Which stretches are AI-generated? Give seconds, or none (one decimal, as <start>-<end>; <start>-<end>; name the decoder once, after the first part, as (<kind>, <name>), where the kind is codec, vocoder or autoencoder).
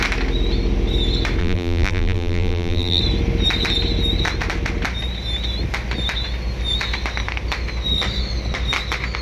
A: 1.4-3.0 (vocoder, BigVGAN v2)